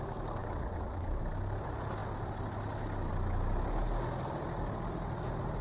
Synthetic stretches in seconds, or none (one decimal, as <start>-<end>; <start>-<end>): 0.4-1.2

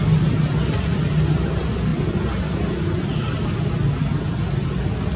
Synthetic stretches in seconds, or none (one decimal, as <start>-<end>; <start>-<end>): none

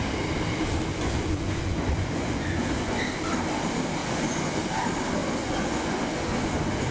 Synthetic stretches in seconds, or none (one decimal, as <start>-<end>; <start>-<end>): 0.9-3.0; 4.0-4.6; 5.2-6.9

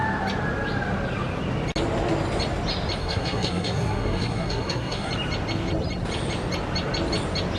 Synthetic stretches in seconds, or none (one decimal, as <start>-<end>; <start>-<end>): 3.0-5.1

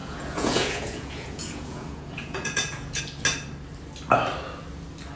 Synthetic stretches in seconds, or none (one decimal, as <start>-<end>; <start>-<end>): 0.0-3.0